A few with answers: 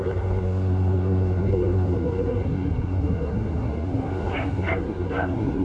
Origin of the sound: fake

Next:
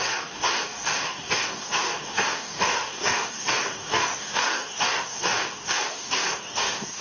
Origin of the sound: fake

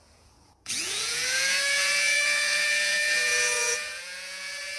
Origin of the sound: fake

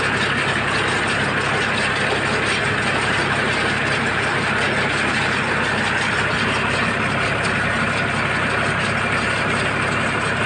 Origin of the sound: real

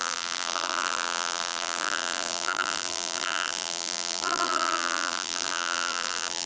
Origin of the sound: fake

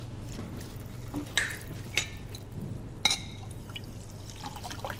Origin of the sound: real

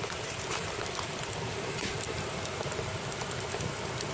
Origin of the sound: fake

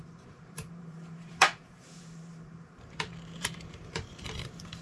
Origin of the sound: fake